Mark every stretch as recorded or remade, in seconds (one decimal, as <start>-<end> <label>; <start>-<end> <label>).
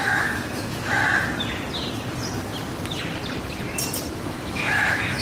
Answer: 0.0-1.0 remade; 1.0-4.1 recorded; 4.1-5.2 remade